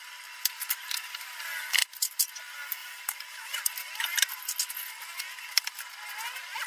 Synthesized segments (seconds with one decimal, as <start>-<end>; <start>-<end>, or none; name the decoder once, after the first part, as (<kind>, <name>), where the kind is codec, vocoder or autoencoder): 1.8-2.3 (vocoder, BigVGAN v2); 2.8-3.7